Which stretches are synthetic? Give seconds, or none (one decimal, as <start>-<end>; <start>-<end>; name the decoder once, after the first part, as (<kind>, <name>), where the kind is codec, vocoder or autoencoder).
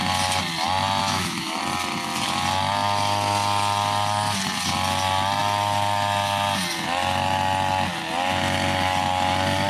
1.0-1.6 (autoencoder, DAC-VAE)